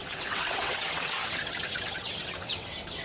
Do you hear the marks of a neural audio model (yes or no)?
yes